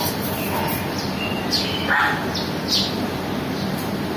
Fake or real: real